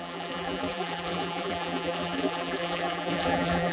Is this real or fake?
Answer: fake